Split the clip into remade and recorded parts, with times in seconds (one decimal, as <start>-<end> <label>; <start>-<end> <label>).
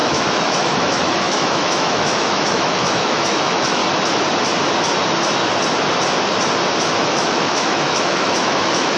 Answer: 0.0-3.8 remade; 3.8-7.0 recorded; 7.0-9.0 remade